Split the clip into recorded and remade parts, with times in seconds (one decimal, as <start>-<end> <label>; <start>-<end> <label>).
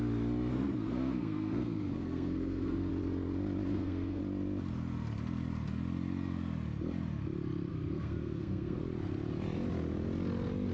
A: 0.0-0.5 recorded; 0.5-2.9 remade; 2.9-3.7 recorded; 3.7-4.2 remade; 4.2-7.7 recorded; 7.7-8.8 remade; 8.8-10.7 recorded